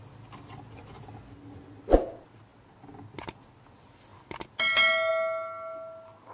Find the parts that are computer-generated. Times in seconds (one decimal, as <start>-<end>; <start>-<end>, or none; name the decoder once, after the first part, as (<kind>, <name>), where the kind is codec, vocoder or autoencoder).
none